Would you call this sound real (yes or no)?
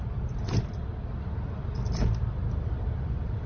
no